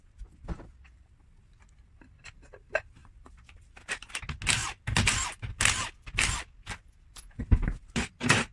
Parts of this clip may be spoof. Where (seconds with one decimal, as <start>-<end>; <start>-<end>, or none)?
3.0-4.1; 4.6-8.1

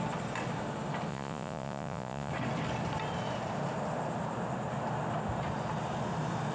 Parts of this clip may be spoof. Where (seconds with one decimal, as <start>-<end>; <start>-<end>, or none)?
1.1-2.3

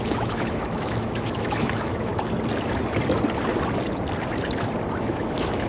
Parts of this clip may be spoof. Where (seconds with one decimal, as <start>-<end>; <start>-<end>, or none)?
0.0-2.1; 5.0-5.7